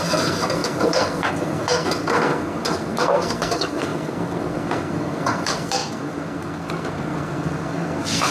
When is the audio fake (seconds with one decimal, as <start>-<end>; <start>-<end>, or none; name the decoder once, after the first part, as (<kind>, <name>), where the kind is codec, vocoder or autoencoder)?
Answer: 0.0-8.3 (codec, SNAC)